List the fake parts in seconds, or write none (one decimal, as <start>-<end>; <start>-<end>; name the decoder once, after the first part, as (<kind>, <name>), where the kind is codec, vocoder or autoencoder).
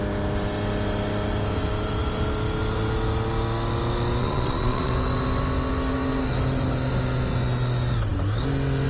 4.2-4.9 (vocoder, Vocos)